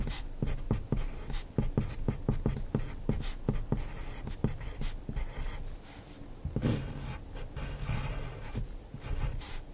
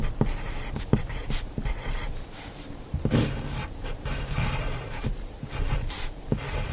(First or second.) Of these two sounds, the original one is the first